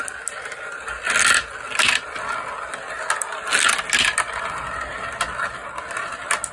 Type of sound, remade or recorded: recorded